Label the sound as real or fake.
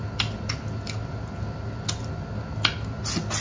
real